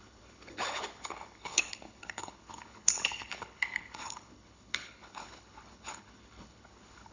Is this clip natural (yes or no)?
no